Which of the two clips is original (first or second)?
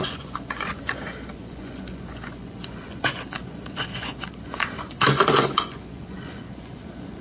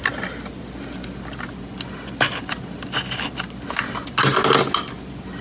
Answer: second